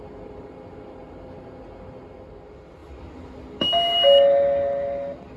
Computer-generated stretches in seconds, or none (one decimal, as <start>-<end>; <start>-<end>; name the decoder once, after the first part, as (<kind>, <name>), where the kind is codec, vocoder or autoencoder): none